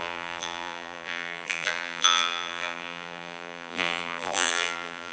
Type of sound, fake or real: fake